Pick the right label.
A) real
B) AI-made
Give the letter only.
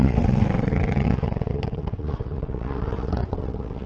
B